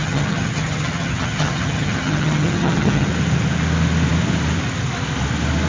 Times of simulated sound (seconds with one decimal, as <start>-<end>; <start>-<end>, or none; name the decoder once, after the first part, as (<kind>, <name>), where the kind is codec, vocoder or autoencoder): 0.0-3.1 (vocoder, HiFi-GAN)